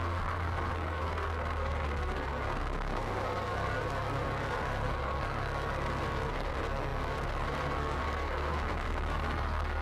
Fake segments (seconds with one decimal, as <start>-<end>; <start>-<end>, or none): 0.0-9.8